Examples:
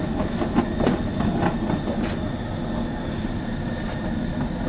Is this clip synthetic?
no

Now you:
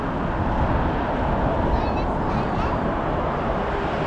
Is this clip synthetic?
no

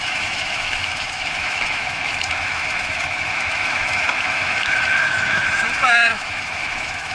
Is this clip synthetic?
yes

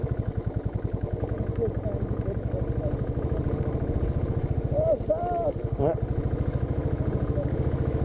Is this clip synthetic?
no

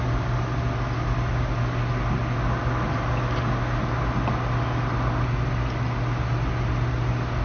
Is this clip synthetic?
no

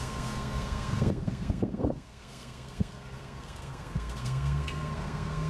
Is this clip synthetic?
yes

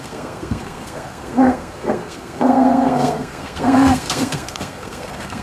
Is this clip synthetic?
yes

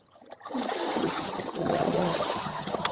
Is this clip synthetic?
yes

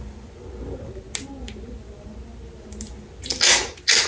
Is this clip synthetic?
no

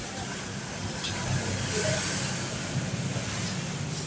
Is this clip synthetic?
no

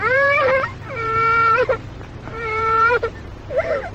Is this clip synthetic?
yes